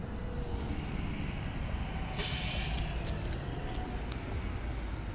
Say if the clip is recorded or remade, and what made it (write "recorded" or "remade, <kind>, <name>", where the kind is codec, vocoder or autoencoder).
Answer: recorded